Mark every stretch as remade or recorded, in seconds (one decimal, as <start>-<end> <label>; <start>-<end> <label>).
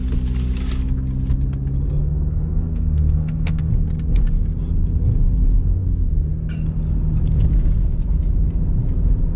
0.0-2.0 recorded; 2.0-3.7 remade; 3.7-9.4 recorded